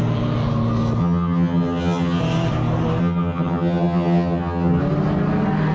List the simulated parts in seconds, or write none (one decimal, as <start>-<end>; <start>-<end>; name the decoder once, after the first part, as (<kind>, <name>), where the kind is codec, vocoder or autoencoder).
1.0-2.2 (vocoder, HiFi-GAN); 3.0-4.8